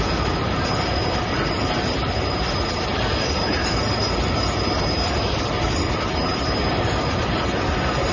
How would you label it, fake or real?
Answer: real